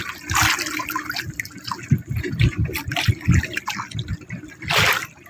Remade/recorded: recorded